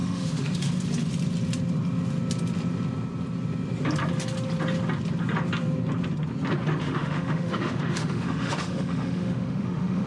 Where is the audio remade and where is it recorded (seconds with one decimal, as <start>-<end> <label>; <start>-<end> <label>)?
0.0-0.7 remade; 0.7-6.8 recorded; 6.8-10.1 remade